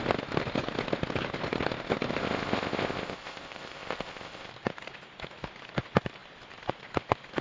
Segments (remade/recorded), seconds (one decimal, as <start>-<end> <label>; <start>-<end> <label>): 0.0-2.2 recorded; 2.2-4.5 remade; 4.5-7.4 recorded